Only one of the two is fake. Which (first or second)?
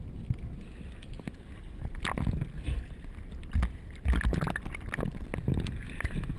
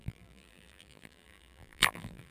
second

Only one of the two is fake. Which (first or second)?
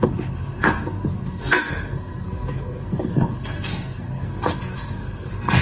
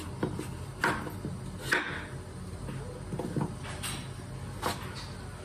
first